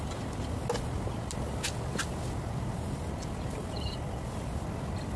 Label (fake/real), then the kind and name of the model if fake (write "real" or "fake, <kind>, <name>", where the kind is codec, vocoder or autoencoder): real